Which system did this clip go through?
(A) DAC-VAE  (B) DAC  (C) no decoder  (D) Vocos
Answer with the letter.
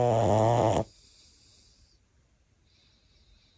C